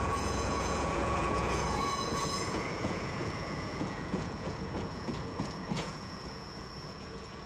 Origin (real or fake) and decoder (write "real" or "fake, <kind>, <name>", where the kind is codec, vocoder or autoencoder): fake, vocoder, Vocos